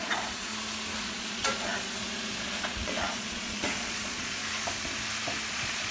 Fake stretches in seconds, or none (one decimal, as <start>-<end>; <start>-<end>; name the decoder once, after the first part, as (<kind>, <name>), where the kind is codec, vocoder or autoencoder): 0.0-0.5 (vocoder, Vocos); 1.0-4.4; 5.5-5.9